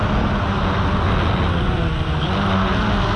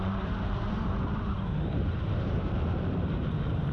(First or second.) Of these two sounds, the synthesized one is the second